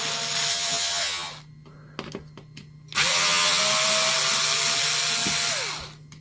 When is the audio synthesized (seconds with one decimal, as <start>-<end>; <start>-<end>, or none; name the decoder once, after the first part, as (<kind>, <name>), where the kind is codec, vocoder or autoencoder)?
0.5-1.3 (vocoder, HiFi-GAN); 3.1-3.6